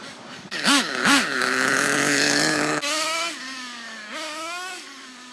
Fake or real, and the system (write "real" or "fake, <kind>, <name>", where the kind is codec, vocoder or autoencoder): fake, codec, DAC